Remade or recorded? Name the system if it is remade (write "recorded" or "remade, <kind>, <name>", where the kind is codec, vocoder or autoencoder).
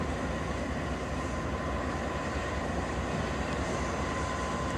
remade, vocoder, BigVGAN v2